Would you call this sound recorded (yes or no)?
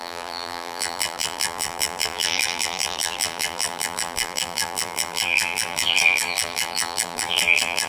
no